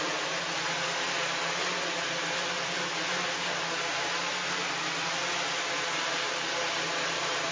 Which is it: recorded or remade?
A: recorded